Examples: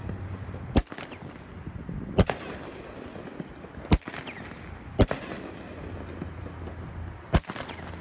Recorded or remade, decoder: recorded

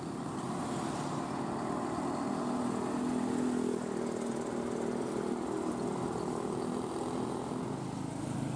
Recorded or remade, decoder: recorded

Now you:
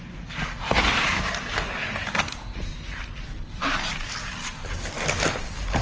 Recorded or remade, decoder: recorded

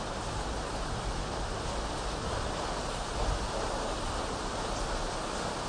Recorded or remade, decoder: recorded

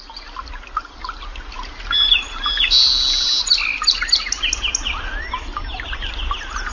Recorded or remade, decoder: recorded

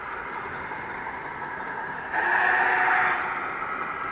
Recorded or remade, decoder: recorded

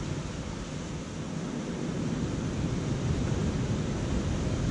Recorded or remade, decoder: recorded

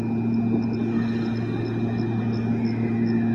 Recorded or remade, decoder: recorded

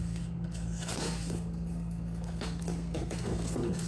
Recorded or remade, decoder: remade, codec, SNAC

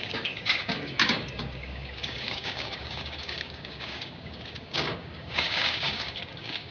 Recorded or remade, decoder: remade, codec, DAC